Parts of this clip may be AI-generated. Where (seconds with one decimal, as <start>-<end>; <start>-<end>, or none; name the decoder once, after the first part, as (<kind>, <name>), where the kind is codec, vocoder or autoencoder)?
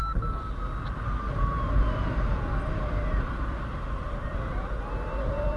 none